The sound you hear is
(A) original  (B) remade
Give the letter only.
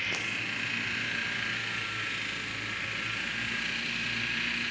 A